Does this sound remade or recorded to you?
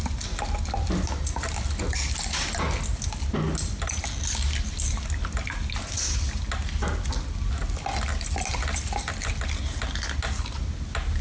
recorded